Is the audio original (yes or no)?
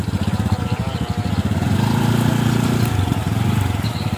yes